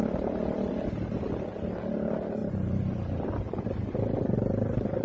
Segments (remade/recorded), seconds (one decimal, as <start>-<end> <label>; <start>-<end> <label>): 0.0-5.0 recorded